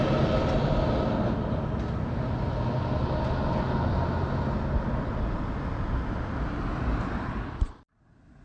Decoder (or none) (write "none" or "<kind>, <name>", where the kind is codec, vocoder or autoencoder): none